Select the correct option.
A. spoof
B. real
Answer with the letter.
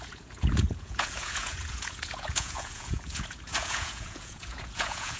A